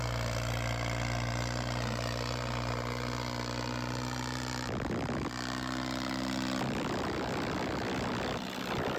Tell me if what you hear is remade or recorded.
recorded